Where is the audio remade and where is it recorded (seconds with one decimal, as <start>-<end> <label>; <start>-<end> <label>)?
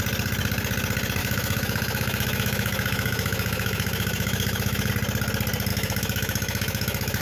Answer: 0.0-1.2 recorded; 1.2-4.9 remade; 4.9-5.7 recorded; 5.7-7.2 remade